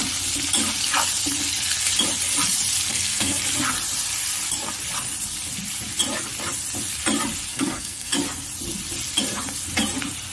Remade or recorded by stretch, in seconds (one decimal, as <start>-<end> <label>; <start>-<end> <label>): 0.0-2.9 recorded; 2.9-3.4 remade; 3.4-7.5 recorded; 7.5-8.1 remade; 8.1-10.3 recorded